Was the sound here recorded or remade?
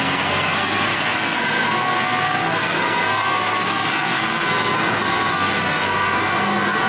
remade